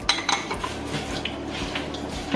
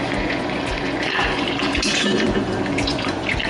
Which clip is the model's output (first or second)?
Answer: second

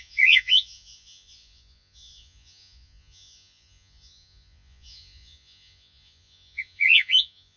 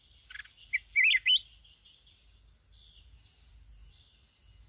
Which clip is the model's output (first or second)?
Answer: first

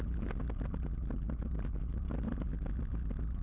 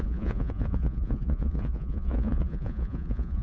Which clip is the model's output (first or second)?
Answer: second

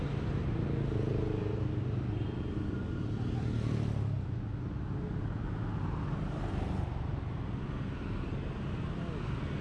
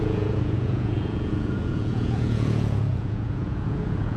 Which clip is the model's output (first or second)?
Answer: second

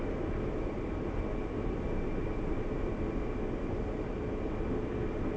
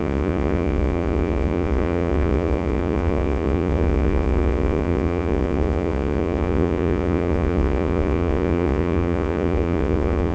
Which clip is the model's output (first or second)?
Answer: second